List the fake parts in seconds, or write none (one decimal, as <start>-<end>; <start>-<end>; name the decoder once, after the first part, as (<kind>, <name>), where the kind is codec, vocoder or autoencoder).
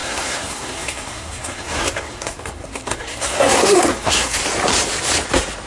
0.0-4.4 (codec, SNAC)